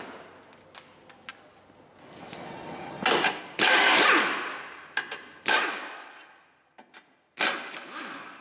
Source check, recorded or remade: recorded